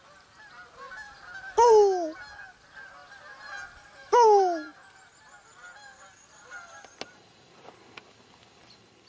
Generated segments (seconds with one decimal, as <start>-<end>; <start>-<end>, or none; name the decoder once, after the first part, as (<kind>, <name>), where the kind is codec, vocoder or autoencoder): none